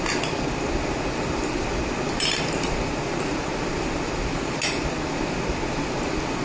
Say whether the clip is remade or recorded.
recorded